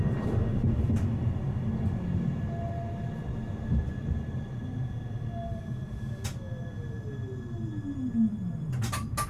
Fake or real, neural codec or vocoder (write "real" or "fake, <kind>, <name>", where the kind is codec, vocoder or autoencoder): real